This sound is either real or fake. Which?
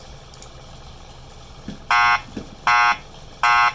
real